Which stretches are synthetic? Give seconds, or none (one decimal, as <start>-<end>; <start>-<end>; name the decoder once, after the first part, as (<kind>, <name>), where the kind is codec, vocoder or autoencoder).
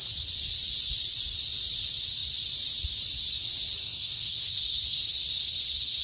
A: 3.8-5.0 (codec, SNAC)